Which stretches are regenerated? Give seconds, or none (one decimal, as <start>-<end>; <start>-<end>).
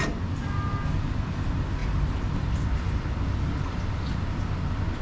none